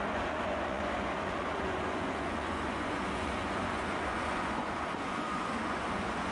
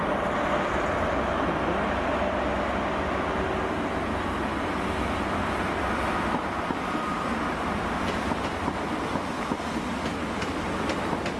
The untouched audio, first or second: second